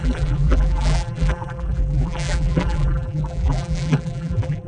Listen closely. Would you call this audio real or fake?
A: fake